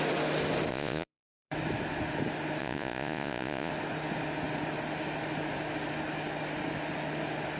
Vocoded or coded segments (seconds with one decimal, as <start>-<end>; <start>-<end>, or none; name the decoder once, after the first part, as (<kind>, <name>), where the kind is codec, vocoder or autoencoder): 0.7-1.5 (vocoder, Vocos); 2.6-3.7